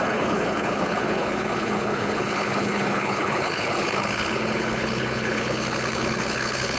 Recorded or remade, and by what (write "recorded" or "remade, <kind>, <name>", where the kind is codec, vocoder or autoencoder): remade, codec, HILCodec